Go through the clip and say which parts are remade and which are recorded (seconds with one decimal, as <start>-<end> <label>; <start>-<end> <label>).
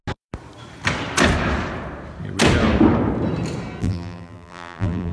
0.0-3.8 recorded; 3.8-5.1 remade